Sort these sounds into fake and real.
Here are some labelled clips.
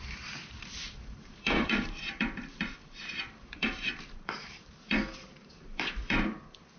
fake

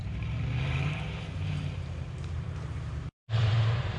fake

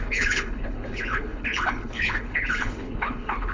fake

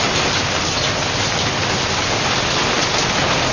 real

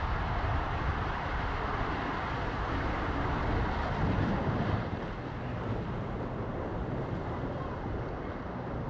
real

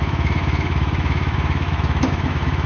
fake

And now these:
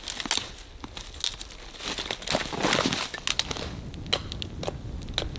real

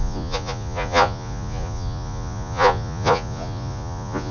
fake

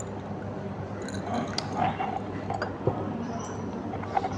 real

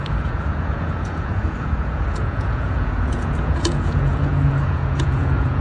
fake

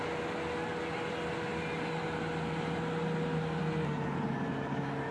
real